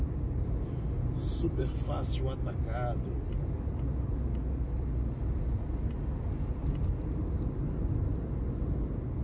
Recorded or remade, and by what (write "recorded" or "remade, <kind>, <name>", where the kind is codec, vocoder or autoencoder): recorded